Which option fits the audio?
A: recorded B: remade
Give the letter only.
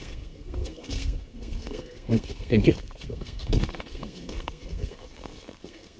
B